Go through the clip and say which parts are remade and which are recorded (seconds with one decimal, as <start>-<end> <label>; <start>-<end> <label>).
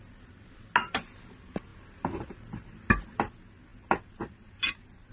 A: 0.0-5.1 recorded